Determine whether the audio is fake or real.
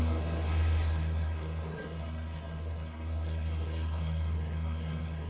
fake